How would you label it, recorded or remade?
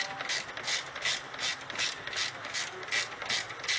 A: recorded